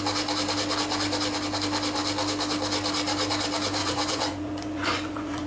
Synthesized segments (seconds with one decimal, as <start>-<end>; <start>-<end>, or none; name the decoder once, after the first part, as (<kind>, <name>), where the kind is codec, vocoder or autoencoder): 3.8-5.5 (vocoder, Vocos)